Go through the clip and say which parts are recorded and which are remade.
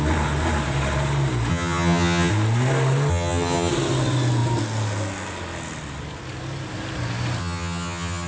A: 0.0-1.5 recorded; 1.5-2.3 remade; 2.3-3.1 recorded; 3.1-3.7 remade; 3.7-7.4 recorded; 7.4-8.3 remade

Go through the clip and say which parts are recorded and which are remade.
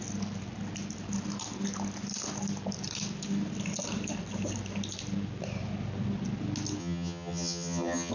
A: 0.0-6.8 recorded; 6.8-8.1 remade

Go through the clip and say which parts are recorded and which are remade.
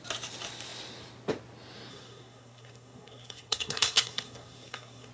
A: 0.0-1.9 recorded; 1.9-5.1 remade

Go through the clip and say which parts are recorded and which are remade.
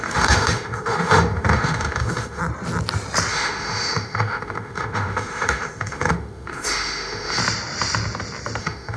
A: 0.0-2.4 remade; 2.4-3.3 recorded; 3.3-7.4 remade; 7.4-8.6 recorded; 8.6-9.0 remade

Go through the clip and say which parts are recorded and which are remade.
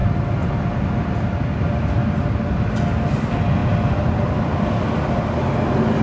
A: 0.0-6.0 recorded